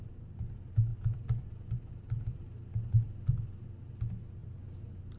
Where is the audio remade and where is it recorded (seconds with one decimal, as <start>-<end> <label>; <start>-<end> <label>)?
0.0-5.2 recorded